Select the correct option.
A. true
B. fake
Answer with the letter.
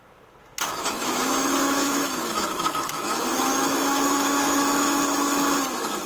B